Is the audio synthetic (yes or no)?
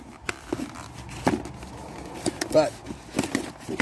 no